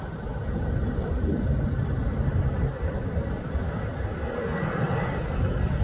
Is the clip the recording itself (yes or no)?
yes